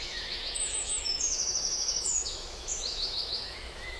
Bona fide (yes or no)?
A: no